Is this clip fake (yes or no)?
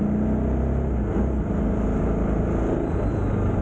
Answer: no